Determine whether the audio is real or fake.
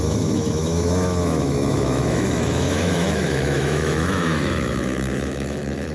fake